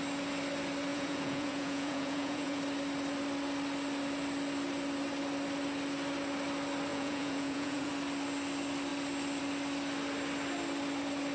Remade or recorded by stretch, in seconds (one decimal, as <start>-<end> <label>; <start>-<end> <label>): 0.0-0.9 recorded; 0.9-2.6 remade; 2.6-6.9 recorded; 6.9-7.9 remade; 7.9-11.3 recorded